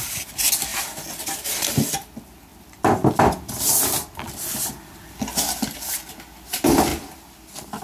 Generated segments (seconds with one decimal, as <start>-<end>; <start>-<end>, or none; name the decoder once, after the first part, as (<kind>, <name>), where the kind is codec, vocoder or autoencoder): 0.7-1.9 (vocoder, BigVGAN v2); 2.5-6.1